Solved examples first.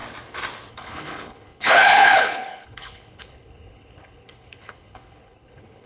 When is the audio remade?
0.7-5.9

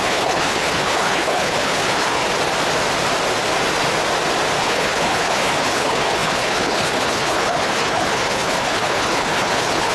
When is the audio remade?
0.0-2.2; 4.6-9.9